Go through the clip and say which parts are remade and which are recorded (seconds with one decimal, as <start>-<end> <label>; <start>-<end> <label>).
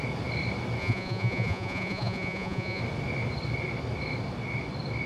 0.0-0.8 recorded; 0.8-2.8 remade; 2.8-5.1 recorded